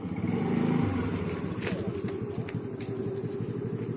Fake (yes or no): no